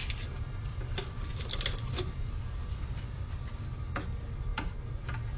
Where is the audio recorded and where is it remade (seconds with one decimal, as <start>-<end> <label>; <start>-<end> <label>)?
0.0-0.7 recorded; 0.7-3.9 remade; 3.9-5.4 recorded